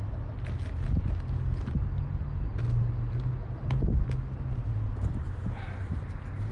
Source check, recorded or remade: recorded